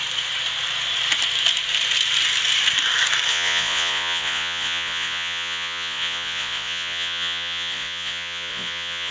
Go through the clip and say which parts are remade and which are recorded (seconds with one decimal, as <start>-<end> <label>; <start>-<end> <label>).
0.0-3.3 recorded; 3.3-9.1 remade

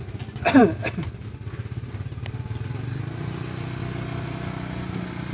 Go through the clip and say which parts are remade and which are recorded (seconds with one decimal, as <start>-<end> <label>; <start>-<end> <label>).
0.0-5.3 recorded